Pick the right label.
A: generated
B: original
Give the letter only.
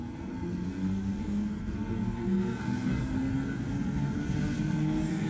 A